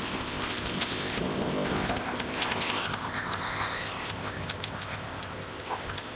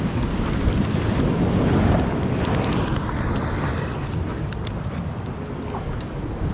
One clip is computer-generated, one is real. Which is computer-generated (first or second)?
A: first